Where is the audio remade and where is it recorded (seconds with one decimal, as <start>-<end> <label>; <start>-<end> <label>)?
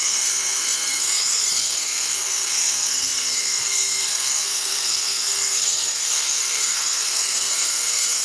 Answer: 0.0-8.2 remade